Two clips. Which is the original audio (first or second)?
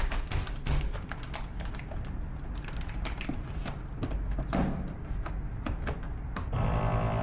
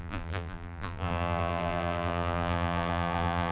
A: first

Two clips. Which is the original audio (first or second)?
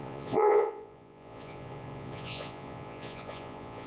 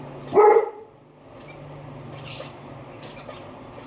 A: second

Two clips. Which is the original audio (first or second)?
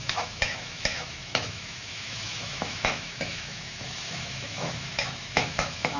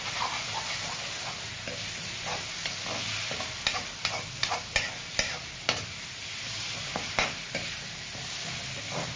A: second